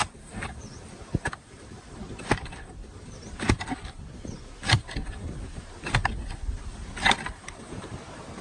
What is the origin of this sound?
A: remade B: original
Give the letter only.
B